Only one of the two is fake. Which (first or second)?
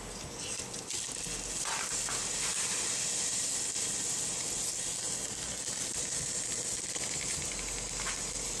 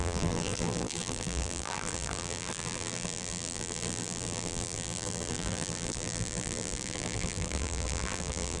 second